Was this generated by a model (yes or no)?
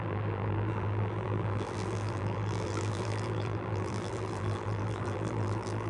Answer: yes